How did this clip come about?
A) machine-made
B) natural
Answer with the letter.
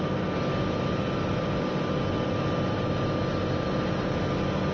B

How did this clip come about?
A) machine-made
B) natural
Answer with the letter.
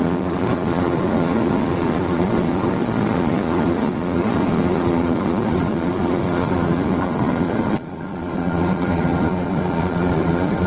A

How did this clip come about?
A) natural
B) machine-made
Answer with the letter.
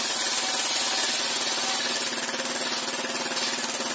A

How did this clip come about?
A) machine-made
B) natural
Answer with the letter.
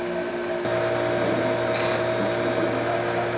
B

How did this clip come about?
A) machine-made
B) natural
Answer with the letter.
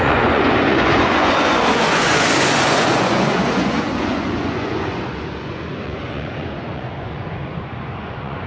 A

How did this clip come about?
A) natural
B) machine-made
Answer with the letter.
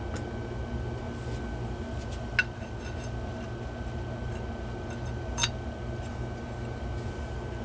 A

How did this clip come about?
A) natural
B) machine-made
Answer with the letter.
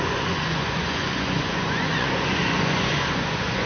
B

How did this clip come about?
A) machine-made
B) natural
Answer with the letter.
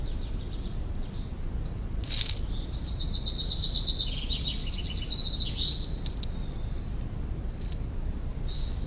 B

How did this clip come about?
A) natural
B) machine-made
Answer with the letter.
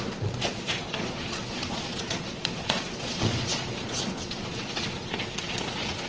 B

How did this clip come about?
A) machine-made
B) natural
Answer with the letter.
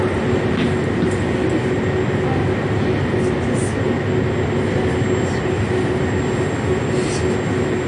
B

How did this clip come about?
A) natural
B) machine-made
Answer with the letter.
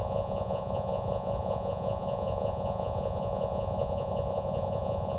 B